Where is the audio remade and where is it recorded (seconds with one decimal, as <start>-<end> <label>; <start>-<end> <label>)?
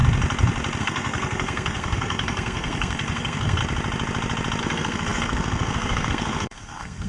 0.0-0.8 recorded; 0.8-3.6 remade; 3.6-4.6 recorded; 4.6-7.1 remade